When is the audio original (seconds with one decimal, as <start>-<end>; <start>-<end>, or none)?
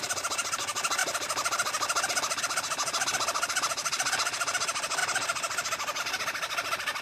0.0-7.0